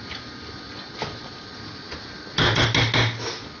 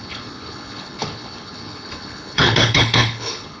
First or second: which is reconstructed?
second